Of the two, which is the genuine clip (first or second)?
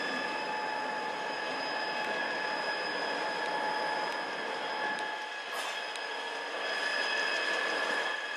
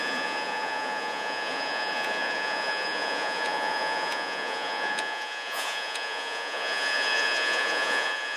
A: first